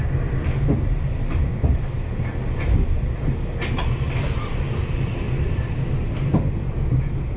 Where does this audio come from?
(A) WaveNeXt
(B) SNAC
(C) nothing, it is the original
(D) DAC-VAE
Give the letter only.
C